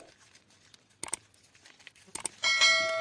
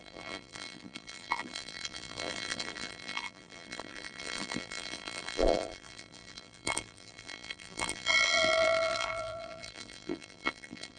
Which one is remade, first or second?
second